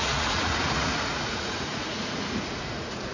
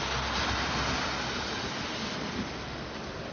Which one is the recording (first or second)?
second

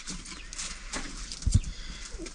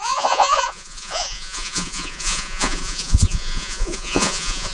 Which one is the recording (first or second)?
first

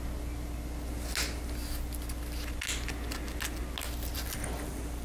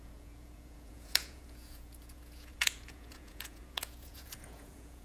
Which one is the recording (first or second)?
first